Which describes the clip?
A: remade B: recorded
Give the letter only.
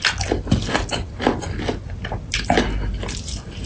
B